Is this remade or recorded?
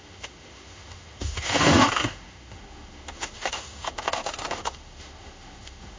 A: remade